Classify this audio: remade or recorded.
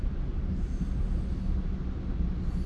recorded